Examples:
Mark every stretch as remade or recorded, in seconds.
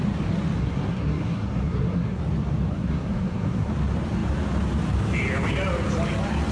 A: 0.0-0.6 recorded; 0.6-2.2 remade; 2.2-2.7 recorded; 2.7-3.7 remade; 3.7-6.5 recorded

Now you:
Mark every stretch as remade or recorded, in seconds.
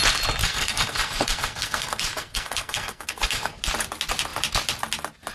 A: 0.0-0.4 recorded; 0.4-3.6 remade; 3.6-5.3 recorded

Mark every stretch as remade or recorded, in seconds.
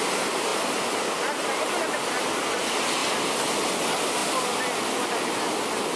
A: 0.0-6.0 recorded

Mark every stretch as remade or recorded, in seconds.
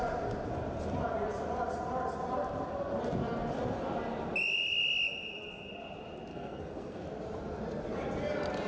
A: 0.0-6.3 recorded; 6.3-7.0 remade; 7.0-8.7 recorded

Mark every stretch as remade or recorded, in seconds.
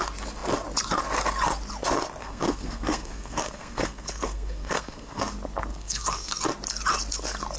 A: 0.0-2.2 recorded; 2.2-5.2 remade; 5.2-5.7 recorded; 5.7-6.4 remade; 6.4-7.6 recorded